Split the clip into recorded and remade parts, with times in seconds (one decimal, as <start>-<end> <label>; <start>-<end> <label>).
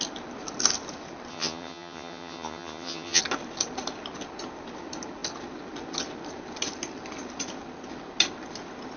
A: 0.0-1.3 recorded; 1.3-3.2 remade; 3.2-9.0 recorded